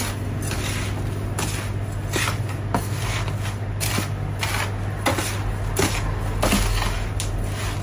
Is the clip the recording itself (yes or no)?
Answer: yes